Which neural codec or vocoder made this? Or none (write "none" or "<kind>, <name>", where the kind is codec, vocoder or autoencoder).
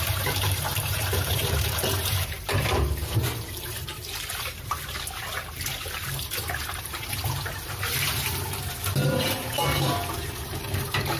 vocoder, BigVGAN v2